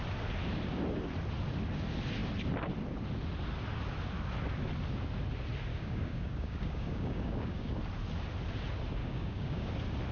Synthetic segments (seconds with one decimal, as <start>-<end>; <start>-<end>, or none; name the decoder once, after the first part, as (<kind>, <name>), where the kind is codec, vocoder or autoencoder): 5.7-7.8 (codec, DAC); 9.0-9.7